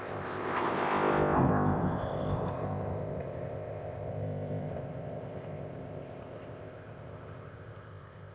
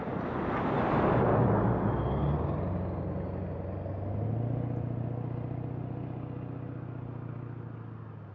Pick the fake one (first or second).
first